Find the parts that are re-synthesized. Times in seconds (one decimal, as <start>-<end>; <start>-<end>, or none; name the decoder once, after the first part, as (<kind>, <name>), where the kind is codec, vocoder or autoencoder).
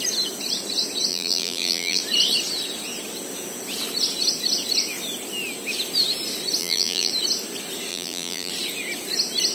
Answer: 1.1-2.0 (vocoder, BigVGAN v2); 6.6-7.1; 7.9-8.5